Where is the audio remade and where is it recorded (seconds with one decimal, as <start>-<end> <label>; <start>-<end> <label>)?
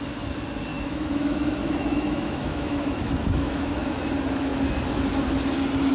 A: 0.0-0.7 recorded; 0.7-4.1 remade; 4.1-5.9 recorded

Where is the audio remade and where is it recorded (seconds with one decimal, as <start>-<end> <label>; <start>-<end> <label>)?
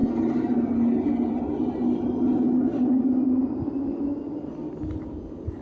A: 0.0-5.6 recorded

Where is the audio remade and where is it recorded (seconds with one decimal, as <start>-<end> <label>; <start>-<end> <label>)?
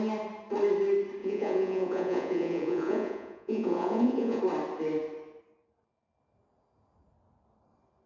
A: 0.0-1.2 recorded; 1.2-4.4 remade; 4.4-8.1 recorded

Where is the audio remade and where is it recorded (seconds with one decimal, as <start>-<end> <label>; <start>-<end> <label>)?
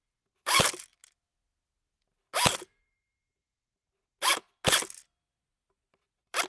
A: 0.0-1.0 remade; 1.0-2.6 recorded; 2.6-3.4 remade; 3.4-6.0 recorded; 6.0-6.5 remade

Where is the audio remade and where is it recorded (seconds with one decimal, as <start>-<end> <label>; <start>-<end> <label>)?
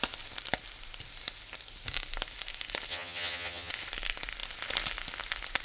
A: 0.0-2.9 recorded; 2.9-3.7 remade; 3.7-5.6 recorded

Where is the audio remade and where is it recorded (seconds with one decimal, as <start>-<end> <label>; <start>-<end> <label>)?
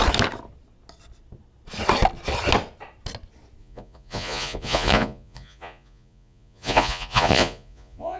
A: 0.0-3.6 recorded; 3.6-8.2 remade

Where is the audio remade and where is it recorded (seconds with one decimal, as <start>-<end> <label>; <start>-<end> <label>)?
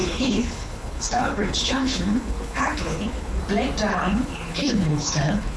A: 0.0-3.4 remade; 3.4-3.9 recorded; 3.9-5.6 remade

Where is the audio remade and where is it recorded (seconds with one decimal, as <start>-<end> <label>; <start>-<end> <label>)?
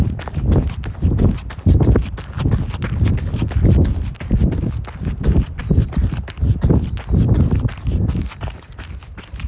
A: 0.0-9.5 recorded